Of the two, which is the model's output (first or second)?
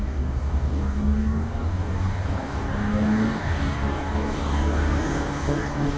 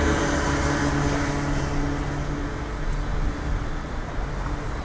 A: first